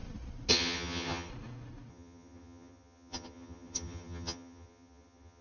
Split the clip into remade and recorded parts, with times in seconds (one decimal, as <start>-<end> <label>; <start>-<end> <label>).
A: 0.0-0.5 recorded; 0.5-1.3 remade; 1.3-1.9 recorded; 1.9-5.4 remade